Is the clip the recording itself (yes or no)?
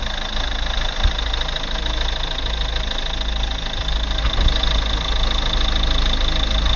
yes